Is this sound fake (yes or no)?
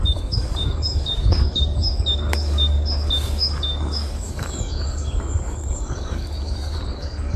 yes